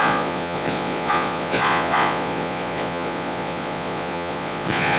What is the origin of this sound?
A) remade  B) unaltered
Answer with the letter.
A